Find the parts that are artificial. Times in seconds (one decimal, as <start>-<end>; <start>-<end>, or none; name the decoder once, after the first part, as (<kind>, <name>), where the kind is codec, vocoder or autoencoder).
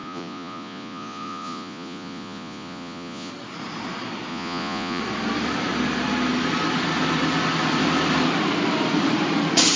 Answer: 0.0-3.3 (vocoder, Vocos); 4.3-5.0